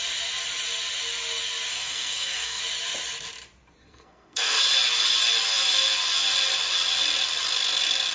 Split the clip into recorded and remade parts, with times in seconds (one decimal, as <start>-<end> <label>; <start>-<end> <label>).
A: 0.0-1.7 recorded; 1.7-2.6 remade; 2.6-3.8 recorded; 3.8-4.6 remade; 4.6-8.1 recorded

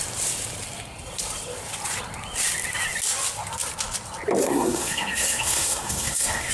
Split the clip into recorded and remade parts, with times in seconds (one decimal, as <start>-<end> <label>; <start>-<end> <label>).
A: 0.0-4.4 recorded; 4.4-6.5 remade

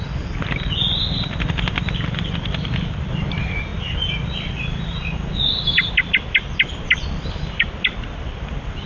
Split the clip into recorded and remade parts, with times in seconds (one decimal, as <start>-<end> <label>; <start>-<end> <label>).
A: 0.0-8.9 recorded

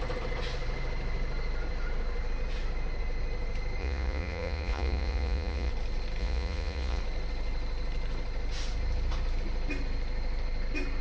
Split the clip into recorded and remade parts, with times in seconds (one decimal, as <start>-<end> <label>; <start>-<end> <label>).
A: 0.0-3.8 recorded; 3.8-5.7 remade; 5.7-6.2 recorded; 6.2-7.0 remade; 7.0-11.0 recorded

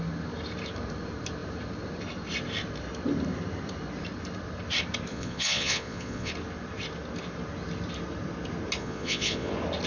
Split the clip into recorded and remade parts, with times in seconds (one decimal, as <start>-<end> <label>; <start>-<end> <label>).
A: 0.0-5.1 recorded; 5.1-6.3 remade; 6.3-8.8 recorded; 8.8-9.5 remade; 9.5-9.9 recorded

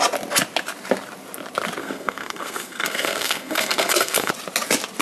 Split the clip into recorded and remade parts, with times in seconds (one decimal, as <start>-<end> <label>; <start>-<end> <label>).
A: 0.0-1.8 recorded; 1.8-4.3 remade; 4.3-5.0 recorded